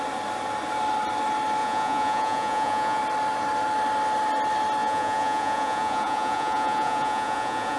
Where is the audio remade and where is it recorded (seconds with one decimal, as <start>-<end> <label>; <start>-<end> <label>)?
0.0-1.6 recorded; 1.6-3.0 remade; 3.0-4.8 recorded; 4.8-7.8 remade